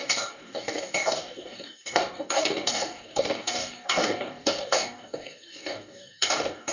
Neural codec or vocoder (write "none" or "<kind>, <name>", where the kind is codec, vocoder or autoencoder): codec, DAC